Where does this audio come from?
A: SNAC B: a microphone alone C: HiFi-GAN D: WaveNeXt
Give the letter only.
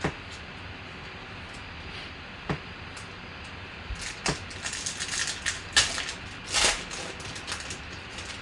B